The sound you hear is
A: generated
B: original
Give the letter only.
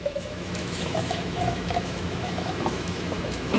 A